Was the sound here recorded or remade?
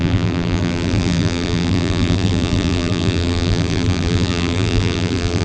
remade